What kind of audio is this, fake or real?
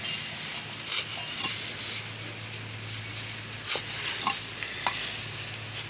real